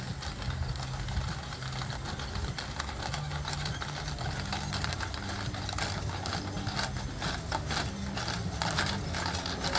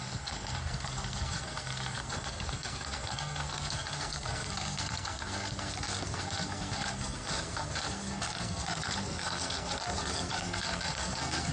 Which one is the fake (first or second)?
second